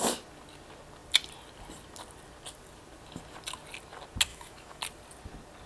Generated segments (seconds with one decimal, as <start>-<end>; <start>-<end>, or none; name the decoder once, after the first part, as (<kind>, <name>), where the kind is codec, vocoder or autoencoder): 4.3-4.8 (autoencoder, DAC-VAE)